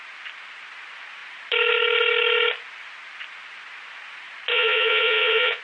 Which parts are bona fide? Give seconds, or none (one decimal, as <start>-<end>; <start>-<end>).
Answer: 0.0-4.5